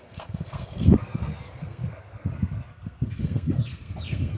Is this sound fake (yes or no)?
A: yes